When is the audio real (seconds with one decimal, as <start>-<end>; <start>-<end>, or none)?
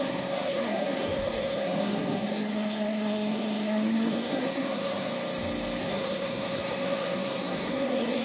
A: 5.1-5.8